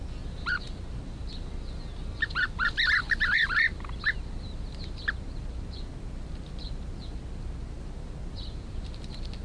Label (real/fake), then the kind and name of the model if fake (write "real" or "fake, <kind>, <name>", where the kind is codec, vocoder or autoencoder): real